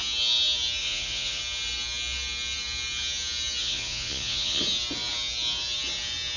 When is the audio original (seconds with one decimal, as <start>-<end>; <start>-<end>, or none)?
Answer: 0.0-0.8; 1.4-3.6; 4.6-6.4